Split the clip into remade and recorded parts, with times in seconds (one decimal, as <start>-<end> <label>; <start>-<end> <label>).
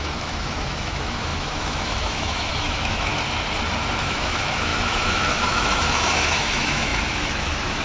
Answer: 0.0-3.1 remade; 3.1-4.0 recorded; 4.0-7.8 remade